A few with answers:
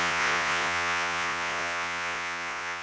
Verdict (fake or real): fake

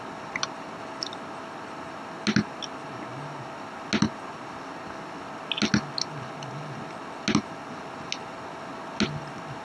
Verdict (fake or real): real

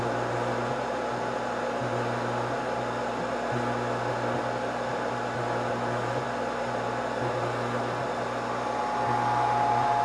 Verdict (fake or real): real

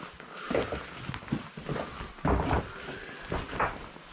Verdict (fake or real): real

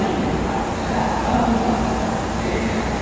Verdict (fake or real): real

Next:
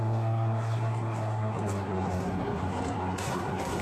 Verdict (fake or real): fake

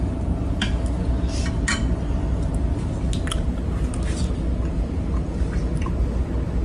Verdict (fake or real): real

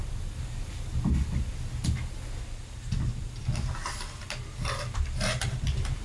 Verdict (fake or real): real